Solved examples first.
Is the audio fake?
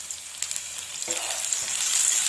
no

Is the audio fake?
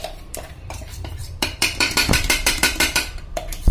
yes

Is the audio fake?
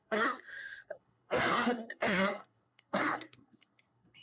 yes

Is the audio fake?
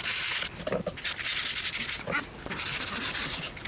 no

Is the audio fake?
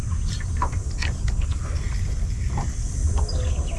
no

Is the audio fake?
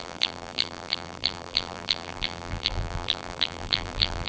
yes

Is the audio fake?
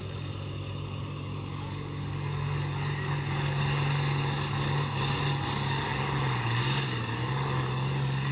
yes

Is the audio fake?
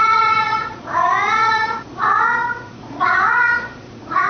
yes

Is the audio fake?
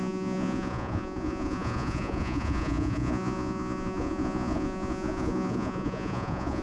yes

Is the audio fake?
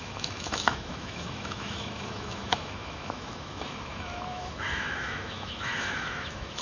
yes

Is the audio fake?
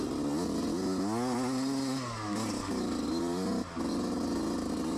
no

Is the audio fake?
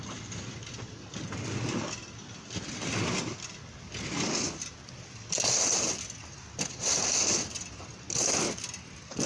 no